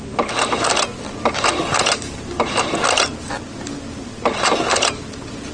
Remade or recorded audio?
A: recorded